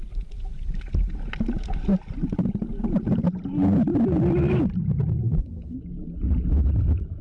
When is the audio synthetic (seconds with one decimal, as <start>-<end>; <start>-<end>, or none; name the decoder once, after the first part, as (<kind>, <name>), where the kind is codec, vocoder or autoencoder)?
3.9-5.7 (vocoder, BigVGAN v2)